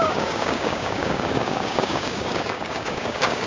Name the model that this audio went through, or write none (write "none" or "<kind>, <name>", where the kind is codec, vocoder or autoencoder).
codec, DAC